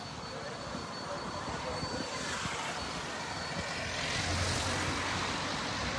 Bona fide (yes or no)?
yes